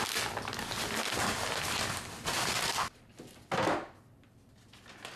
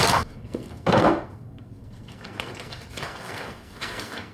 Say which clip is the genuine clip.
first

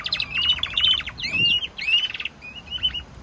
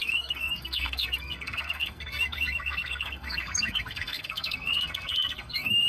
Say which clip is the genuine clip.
first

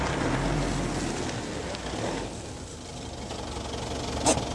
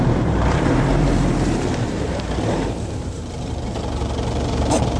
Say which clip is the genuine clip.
first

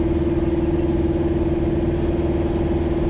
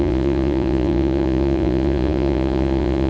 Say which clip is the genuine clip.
first